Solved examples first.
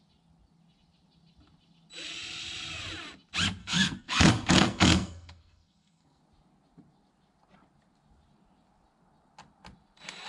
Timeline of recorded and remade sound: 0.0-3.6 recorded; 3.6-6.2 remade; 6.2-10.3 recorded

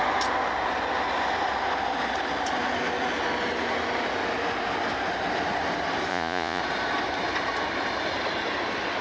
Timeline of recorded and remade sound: 0.0-6.1 recorded; 6.1-6.6 remade; 6.6-9.0 recorded

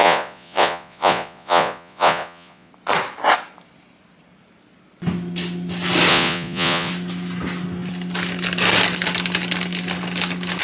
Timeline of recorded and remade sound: 0.0-2.7 remade; 2.7-6.1 recorded; 6.1-6.9 remade; 6.9-10.6 recorded